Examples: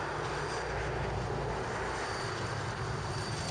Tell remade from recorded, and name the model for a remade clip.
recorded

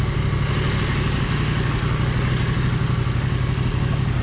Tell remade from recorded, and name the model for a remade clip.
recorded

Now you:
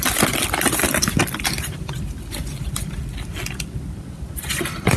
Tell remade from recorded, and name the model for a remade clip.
recorded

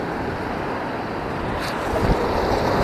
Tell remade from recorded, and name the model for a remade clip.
recorded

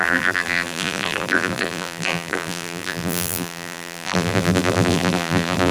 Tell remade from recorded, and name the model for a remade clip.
remade, vocoder, BigVGAN v2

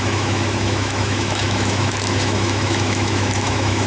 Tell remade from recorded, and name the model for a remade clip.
remade, autoencoder, DAC-VAE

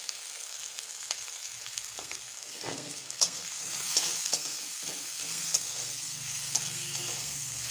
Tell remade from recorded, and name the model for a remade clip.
remade, codec, SNAC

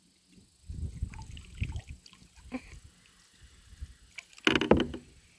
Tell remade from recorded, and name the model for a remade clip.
recorded